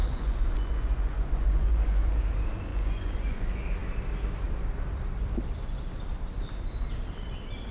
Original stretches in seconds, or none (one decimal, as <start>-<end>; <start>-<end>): 2.2-2.7; 3.4-7.7

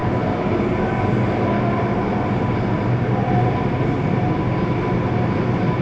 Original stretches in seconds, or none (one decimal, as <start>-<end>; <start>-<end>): 0.0-5.8

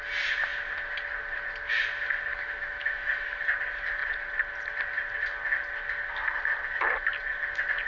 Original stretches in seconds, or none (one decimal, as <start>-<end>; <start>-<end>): 0.0-2.3; 3.4-7.9

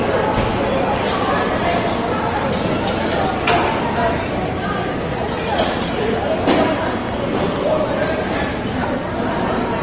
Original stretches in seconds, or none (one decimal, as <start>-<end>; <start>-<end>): 0.0-5.1; 5.9-9.8

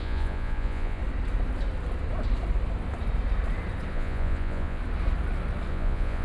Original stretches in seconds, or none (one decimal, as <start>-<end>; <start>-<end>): 1.0-3.9; 4.8-5.7

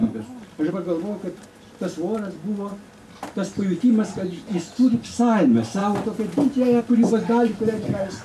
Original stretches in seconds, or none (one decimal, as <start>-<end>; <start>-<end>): 0.0-8.2

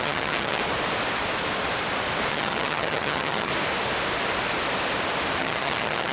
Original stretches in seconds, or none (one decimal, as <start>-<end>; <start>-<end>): 0.6-2.3; 3.5-5.4

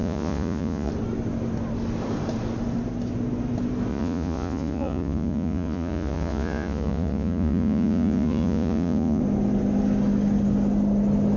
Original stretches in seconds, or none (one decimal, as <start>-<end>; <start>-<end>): 0.9-3.9; 9.2-11.4